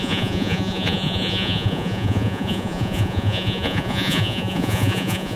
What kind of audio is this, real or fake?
fake